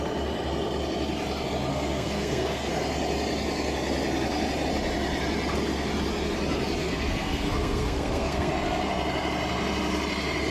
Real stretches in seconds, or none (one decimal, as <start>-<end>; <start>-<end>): 0.0-1.7; 2.7-6.8; 8.5-10.5